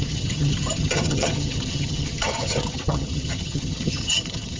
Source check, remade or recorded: remade